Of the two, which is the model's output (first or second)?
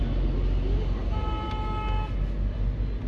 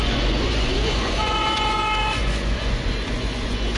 second